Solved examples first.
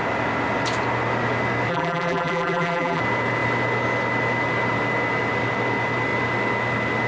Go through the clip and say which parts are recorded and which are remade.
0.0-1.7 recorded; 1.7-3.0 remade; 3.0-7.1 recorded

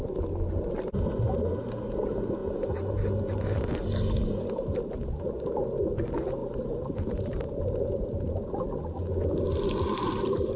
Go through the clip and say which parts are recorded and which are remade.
0.0-6.4 recorded; 6.4-8.3 remade; 8.3-10.6 recorded

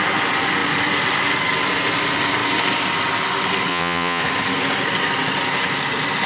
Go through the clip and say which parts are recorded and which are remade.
0.0-3.7 recorded; 3.7-4.2 remade; 4.2-6.3 recorded

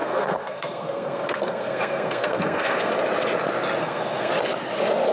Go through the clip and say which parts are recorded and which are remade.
0.0-2.9 remade; 2.9-3.8 recorded; 3.8-4.3 remade; 4.3-5.1 recorded

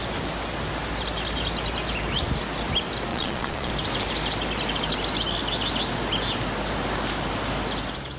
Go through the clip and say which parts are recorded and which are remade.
0.0-3.1 recorded; 3.1-3.7 remade; 3.7-8.2 recorded

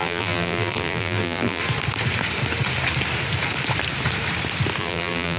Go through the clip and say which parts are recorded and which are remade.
0.0-1.6 remade; 1.6-4.8 recorded; 4.8-5.4 remade